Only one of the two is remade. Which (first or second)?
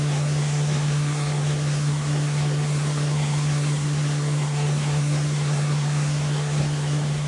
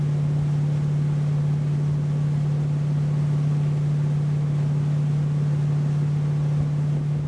first